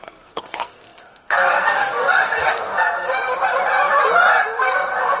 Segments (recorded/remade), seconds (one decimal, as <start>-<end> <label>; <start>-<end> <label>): 0.0-3.1 remade; 3.1-4.4 recorded; 4.4-5.2 remade